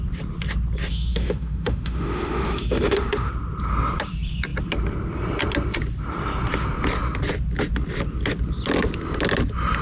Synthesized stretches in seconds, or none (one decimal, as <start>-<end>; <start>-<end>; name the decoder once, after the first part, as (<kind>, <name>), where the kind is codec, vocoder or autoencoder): 0.9-3.3 (autoencoder, DAC-VAE)